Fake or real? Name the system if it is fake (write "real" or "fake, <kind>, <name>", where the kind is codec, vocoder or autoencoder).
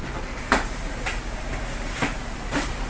fake, vocoder, BigVGAN v2